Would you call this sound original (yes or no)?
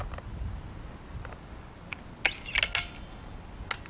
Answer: yes